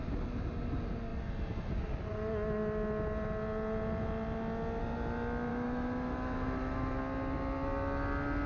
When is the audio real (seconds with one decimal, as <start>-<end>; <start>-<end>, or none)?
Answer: 0.0-5.5; 7.0-8.5